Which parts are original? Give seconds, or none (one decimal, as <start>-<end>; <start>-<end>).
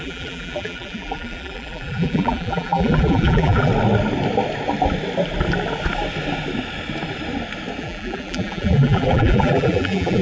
3.7-7.8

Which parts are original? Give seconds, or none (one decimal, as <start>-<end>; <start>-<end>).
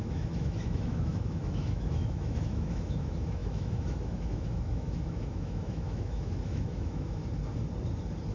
7.2-8.3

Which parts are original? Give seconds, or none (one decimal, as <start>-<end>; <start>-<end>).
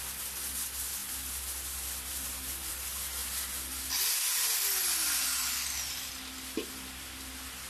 0.0-7.7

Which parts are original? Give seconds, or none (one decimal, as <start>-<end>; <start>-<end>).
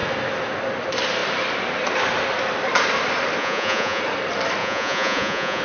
0.0-3.4; 4.0-4.6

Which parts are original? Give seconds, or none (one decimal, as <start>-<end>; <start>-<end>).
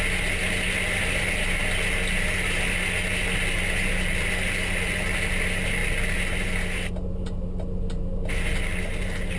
0.0-9.4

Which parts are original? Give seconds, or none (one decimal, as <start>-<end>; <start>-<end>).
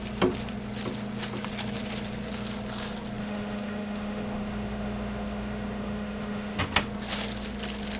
0.0-3.2; 6.6-8.0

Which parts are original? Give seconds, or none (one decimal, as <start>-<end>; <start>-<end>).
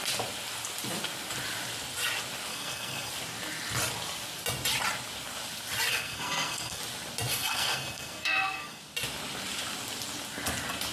0.0-2.5; 3.1-5.9; 6.8-7.3; 8.8-10.9